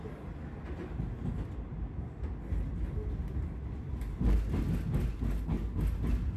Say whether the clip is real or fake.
real